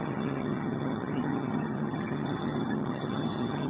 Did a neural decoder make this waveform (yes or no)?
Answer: yes